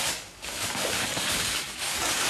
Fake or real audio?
fake